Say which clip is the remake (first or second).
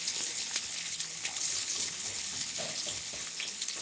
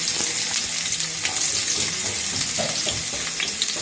first